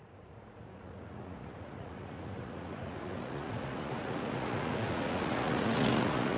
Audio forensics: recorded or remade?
remade